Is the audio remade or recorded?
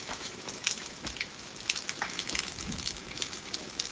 remade